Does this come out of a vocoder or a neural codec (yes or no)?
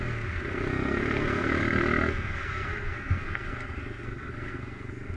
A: yes